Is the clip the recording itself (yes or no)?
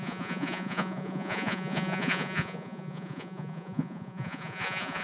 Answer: no